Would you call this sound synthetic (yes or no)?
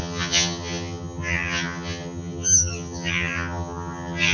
yes